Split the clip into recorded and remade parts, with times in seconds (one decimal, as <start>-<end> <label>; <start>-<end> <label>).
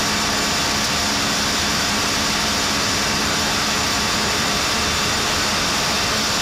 0.0-1.7 recorded; 1.7-5.5 remade; 5.5-6.4 recorded